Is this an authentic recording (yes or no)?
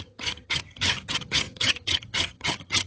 no